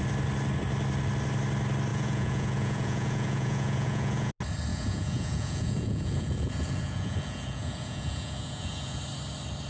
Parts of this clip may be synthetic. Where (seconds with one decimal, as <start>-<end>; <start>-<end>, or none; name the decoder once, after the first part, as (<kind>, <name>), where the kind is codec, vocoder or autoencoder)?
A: 1.9-4.3 (vocoder, Vocos); 4.7-9.0